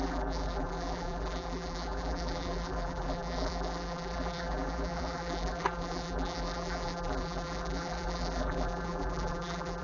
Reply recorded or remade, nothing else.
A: remade